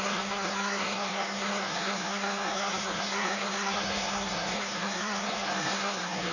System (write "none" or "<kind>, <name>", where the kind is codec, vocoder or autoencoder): codec, SNAC